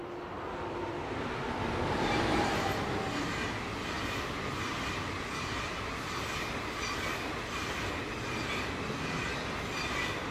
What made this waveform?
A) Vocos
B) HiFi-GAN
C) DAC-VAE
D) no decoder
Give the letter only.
D